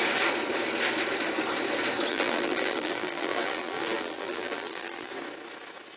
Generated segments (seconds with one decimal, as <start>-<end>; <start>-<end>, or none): 2.1-5.1